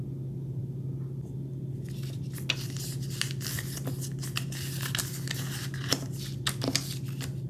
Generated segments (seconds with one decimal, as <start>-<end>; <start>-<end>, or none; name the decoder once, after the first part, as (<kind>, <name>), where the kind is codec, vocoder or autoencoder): none